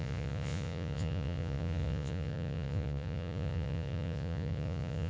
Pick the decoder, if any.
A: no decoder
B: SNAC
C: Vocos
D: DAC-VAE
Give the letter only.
C